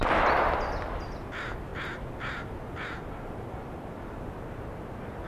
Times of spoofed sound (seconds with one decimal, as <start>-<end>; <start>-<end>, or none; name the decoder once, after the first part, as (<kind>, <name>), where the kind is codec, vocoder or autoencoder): none